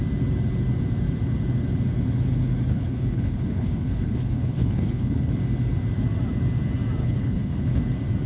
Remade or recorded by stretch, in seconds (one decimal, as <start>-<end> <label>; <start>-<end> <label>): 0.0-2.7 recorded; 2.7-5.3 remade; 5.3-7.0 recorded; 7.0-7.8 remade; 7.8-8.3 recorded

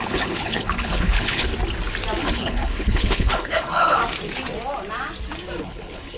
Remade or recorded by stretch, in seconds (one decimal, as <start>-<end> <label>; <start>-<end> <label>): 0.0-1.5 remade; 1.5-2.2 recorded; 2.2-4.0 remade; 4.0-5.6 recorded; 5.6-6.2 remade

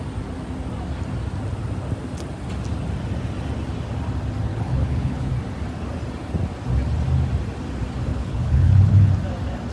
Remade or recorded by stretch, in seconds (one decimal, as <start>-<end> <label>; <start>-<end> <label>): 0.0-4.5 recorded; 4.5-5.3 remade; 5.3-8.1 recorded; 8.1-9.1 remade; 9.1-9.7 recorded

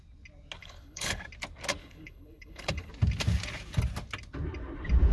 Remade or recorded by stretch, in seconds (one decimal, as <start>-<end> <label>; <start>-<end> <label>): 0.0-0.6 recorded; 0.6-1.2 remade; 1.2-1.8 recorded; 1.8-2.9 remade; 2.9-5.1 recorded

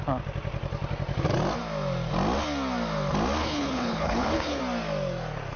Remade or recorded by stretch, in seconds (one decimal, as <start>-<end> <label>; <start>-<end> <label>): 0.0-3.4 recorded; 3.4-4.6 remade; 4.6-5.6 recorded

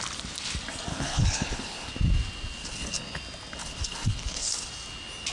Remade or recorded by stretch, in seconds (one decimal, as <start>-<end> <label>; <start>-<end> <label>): 0.0-0.9 recorded; 0.9-1.9 remade; 1.9-2.6 recorded; 2.6-3.2 remade; 3.2-3.6 recorded; 3.6-4.7 remade; 4.7-5.3 recorded

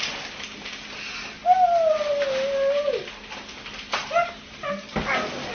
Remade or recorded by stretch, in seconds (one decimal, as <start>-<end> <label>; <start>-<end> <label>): 0.0-5.5 recorded

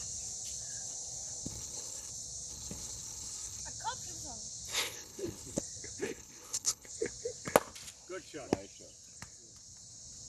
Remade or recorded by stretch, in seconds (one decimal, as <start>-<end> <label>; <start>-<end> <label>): 0.0-1.5 recorded; 1.5-2.1 remade; 2.1-2.5 recorded; 2.5-3.6 remade; 3.6-4.7 recorded; 4.7-5.6 remade; 5.6-6.0 recorded; 6.0-6.9 remade; 6.9-10.3 recorded